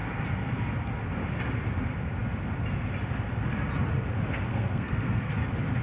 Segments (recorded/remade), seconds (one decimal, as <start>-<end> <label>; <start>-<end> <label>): 0.0-4.5 recorded; 4.5-5.3 remade; 5.3-5.8 recorded